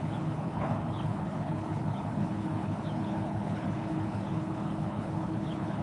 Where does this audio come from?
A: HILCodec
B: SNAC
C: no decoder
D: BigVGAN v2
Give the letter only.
A